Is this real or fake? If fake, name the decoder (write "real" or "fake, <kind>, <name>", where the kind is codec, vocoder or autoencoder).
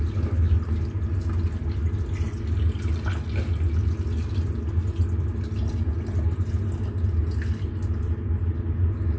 real